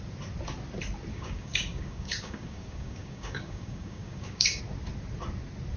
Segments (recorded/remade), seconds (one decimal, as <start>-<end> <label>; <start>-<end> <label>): 0.0-1.1 recorded; 1.1-4.6 remade; 4.6-5.8 recorded